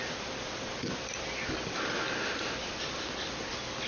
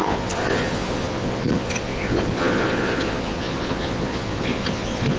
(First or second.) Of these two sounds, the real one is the first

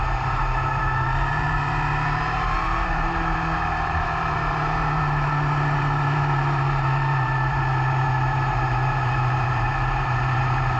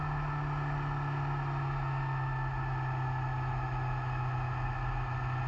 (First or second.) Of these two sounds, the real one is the second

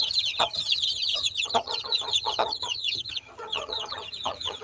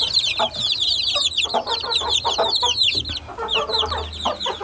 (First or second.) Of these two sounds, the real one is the second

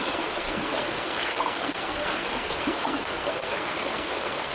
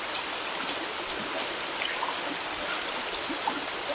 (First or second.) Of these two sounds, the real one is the second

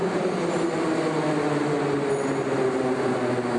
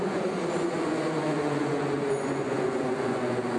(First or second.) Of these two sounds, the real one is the first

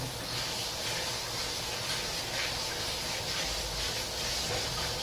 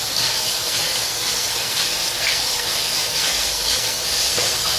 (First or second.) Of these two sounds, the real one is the first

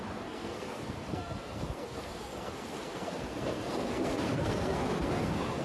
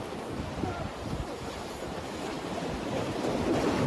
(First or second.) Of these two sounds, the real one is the second